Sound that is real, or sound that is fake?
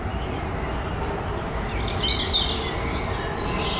real